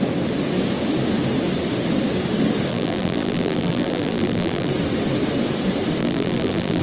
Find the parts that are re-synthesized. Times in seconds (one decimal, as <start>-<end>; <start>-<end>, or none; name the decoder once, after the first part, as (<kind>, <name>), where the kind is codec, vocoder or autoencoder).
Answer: 2.7-4.7 (vocoder, BigVGAN v2); 6.0-6.8